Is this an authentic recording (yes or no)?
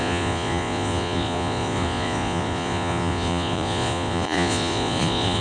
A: no